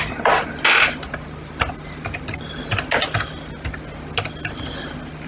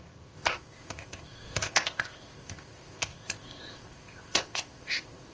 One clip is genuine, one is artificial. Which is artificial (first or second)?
second